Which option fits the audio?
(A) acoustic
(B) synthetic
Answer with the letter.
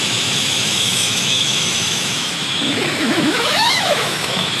B